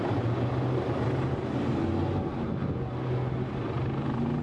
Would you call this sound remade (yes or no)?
no